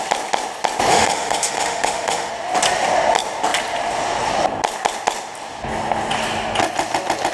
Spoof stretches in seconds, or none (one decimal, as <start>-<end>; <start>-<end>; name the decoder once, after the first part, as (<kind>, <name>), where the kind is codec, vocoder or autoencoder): 0.9-2.3 (autoencoder, DAC-VAE)